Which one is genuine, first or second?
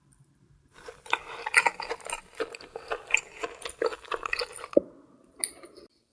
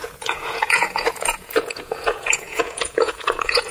first